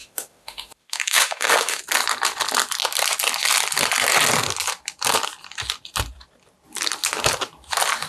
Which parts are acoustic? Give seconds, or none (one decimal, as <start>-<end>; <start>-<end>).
1.8-8.1